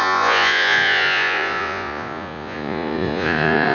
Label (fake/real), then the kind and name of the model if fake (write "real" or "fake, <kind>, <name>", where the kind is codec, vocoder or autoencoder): fake, vocoder, Vocos